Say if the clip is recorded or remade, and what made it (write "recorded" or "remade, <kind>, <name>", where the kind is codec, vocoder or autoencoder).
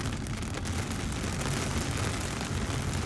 recorded